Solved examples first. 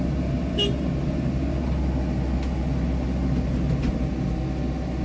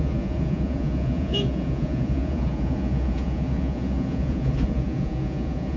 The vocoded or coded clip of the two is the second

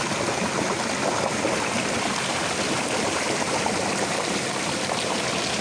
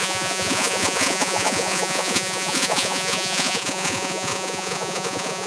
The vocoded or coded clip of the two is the second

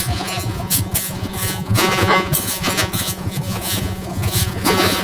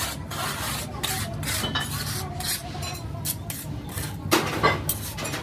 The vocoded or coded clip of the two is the first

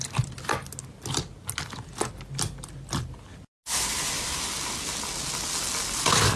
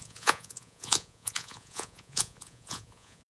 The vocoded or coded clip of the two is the second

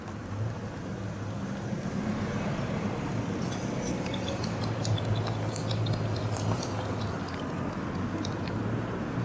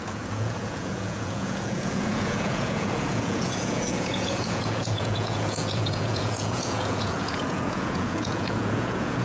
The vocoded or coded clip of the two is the second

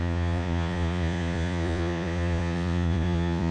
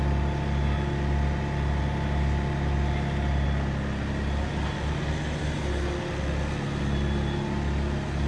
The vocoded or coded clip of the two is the first